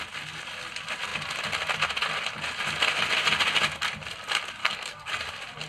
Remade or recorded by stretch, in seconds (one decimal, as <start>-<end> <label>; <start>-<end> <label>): 0.0-4.6 recorded; 4.6-5.2 remade; 5.2-5.7 recorded